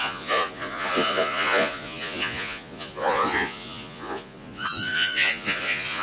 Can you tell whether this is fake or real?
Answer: fake